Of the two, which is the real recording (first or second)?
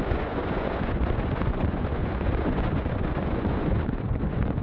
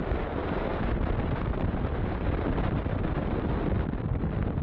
second